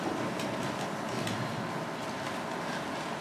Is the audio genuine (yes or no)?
yes